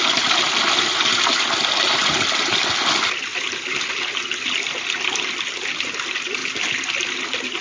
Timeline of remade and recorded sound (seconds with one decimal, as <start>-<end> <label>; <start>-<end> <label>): 0.0-7.6 recorded